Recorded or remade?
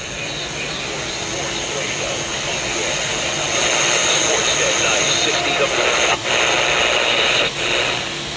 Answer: recorded